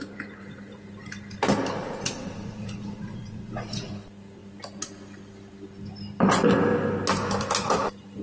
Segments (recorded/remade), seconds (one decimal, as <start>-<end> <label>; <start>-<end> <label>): 0.0-1.8 recorded; 1.8-3.9 remade; 3.9-8.2 recorded